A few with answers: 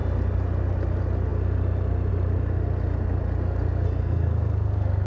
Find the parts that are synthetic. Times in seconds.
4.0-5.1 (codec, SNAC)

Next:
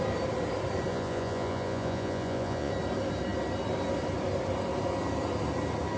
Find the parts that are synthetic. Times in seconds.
0.9-2.7 (vocoder, Vocos)

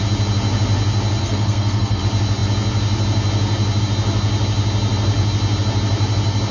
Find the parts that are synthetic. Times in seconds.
1.2-2.0 (codec, SNAC)

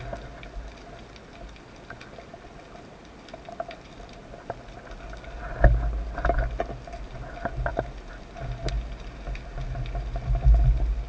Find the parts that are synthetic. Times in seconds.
none